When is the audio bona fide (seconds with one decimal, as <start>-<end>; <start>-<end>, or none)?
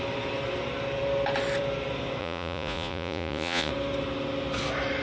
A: 0.0-2.2; 3.7-5.0